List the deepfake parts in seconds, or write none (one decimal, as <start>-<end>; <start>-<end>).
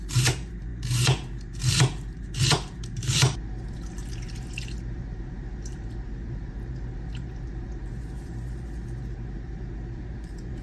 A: 0.0-10.6